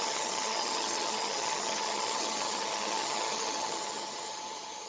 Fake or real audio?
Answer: fake